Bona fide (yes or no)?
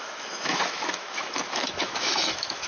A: no